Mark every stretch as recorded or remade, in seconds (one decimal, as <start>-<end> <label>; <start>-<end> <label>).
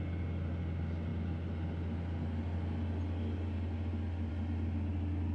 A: 0.0-5.3 recorded